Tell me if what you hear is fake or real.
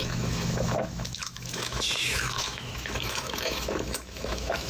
fake